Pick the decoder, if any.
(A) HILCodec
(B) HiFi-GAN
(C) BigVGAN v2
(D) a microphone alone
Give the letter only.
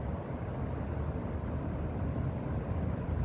D